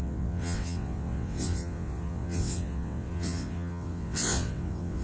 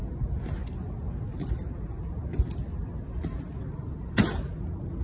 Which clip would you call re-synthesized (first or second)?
first